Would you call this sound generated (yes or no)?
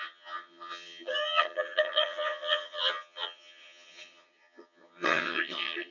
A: yes